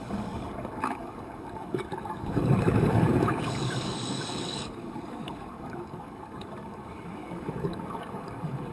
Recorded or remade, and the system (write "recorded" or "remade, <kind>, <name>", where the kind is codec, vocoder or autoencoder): remade, codec, DAC